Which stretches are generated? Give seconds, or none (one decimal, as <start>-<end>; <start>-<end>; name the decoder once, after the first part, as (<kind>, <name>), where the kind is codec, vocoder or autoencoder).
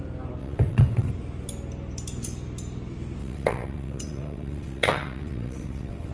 0.4-1.1 (vocoder, WaveNeXt); 3.2-6.1